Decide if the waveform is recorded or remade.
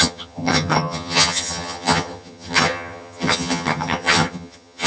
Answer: remade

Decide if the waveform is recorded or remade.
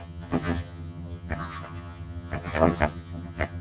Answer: remade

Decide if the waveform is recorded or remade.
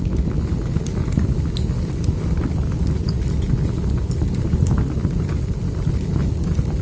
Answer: recorded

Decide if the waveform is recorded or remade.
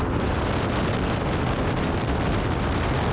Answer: recorded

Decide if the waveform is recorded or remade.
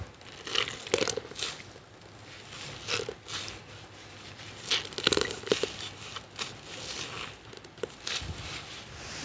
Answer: recorded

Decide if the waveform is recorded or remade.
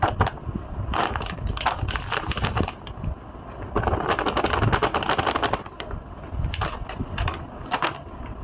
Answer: recorded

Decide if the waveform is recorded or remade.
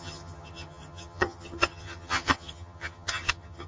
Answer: remade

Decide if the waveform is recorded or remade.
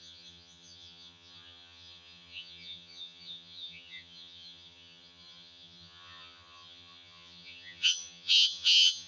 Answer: remade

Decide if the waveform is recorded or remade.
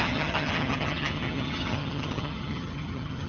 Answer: remade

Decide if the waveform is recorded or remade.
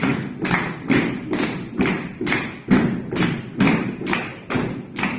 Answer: recorded